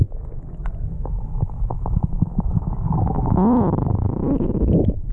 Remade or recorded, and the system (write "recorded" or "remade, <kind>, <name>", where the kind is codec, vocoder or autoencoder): remade, autoencoder, DAC-VAE